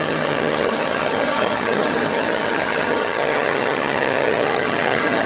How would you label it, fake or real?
fake